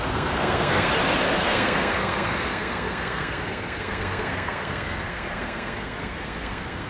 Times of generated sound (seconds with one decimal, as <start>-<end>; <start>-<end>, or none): 0.0-0.9; 1.4-6.9